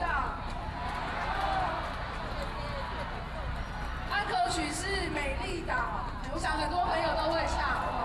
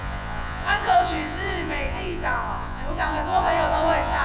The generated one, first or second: second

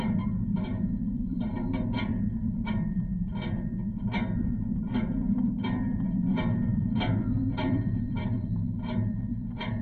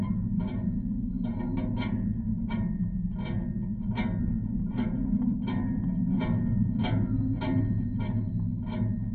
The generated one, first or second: first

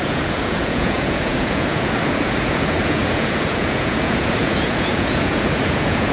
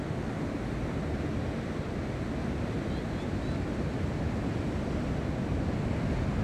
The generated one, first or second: first